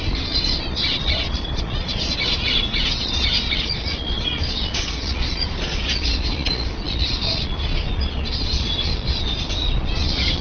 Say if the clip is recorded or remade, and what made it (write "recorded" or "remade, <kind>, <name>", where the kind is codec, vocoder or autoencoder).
remade, vocoder, Vocos